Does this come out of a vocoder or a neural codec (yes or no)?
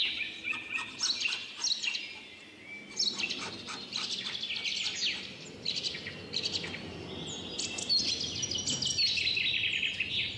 no